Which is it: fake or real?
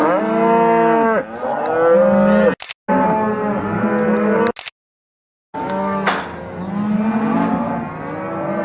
real